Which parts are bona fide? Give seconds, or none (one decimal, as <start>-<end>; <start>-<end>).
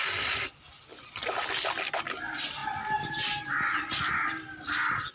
0.0-5.1